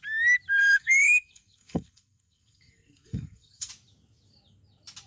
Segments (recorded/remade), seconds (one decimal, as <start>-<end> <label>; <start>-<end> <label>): 0.0-0.6 recorded; 0.6-3.7 remade; 3.7-5.1 recorded